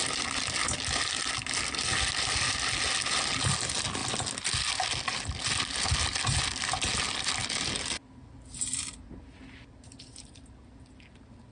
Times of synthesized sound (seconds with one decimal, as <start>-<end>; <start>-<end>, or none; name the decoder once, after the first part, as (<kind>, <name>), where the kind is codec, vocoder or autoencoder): none